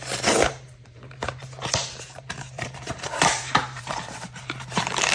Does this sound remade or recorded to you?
remade